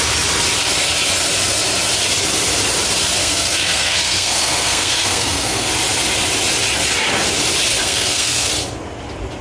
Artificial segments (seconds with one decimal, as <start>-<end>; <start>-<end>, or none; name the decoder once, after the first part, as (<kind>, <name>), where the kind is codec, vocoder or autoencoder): 3.2-5.7 (codec, SNAC); 7.8-8.5